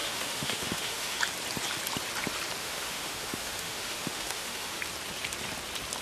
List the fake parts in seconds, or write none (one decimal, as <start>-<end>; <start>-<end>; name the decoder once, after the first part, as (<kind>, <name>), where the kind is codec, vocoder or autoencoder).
0.0-1.2 (autoencoder, DAC-VAE); 2.6-4.8